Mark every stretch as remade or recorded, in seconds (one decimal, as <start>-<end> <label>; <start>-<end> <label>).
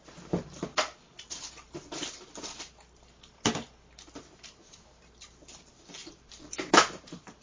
0.0-6.0 recorded; 6.0-7.4 remade